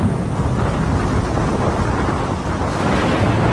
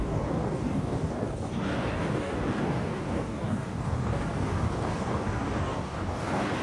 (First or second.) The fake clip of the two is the second